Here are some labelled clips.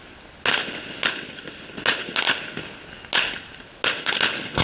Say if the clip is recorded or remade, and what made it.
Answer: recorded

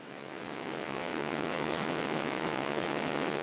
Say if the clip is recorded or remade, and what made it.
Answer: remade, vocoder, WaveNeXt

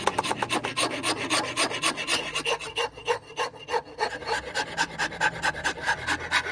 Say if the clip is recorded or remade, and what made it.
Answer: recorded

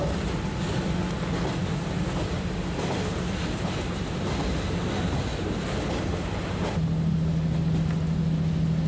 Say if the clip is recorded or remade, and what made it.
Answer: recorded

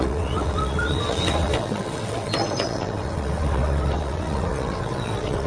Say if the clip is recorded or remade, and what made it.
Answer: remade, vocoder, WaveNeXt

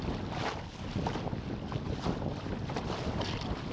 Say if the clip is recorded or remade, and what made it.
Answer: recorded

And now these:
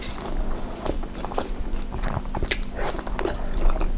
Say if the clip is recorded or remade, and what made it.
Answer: recorded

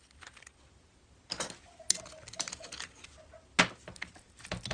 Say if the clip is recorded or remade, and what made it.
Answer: recorded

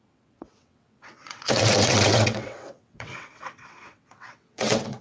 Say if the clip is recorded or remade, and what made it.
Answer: remade, vocoder, WaveNeXt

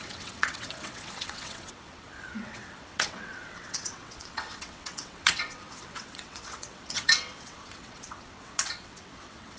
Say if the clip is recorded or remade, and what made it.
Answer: remade, vocoder, WaveNeXt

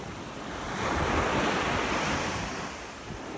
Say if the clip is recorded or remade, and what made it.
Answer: recorded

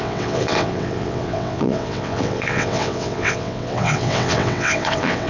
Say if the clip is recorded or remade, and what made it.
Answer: remade, vocoder, WaveNeXt